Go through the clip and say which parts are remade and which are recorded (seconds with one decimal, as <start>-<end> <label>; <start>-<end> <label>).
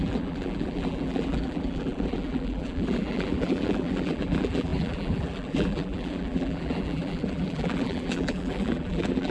0.0-9.3 remade